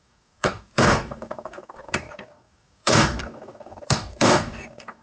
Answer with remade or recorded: remade